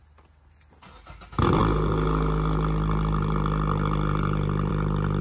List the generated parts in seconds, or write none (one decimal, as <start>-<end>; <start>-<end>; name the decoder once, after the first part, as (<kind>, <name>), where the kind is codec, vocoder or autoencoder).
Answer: none

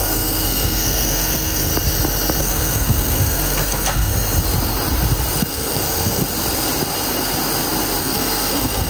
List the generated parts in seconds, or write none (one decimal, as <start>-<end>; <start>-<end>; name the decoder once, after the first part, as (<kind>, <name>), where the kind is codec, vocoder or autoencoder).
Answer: 0.0-1.7 (codec, SNAC); 2.4-4.1; 5.4-6.2; 8.0-8.9

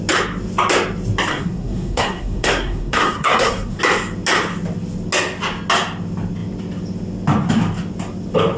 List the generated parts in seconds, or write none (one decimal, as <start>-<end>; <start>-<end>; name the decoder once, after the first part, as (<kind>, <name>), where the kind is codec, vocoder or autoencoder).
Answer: 1.3-3.8 (codec, SNAC)

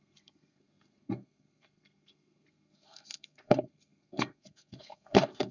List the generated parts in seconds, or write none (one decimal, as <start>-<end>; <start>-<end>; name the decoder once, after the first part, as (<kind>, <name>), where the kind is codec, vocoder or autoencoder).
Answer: 0.0-5.5 (codec, SNAC)